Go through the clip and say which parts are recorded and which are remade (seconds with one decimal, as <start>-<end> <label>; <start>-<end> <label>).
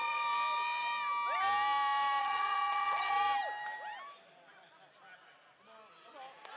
0.0-2.2 recorded; 2.2-3.1 remade; 3.1-6.6 recorded